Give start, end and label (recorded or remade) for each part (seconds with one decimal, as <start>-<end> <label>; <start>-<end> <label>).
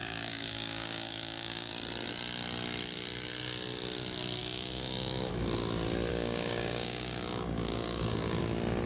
0.0-1.7 remade; 1.7-4.4 recorded; 4.4-5.3 remade; 5.3-6.1 recorded; 6.1-8.4 remade; 8.4-8.9 recorded